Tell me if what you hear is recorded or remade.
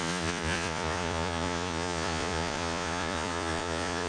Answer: remade